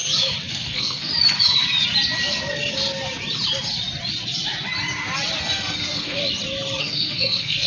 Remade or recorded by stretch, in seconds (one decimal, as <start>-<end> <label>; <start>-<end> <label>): 0.0-0.5 recorded; 0.5-1.1 remade; 1.1-5.4 recorded; 5.4-6.2 remade; 6.2-6.8 recorded; 6.8-7.7 remade